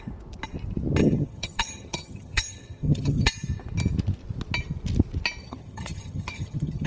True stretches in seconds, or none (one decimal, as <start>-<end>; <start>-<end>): 0.0-1.0; 3.3-5.4